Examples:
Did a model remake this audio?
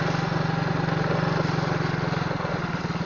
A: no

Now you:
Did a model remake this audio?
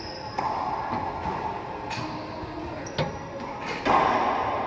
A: no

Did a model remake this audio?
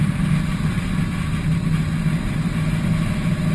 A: no